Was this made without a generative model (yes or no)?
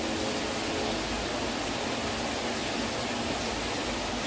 yes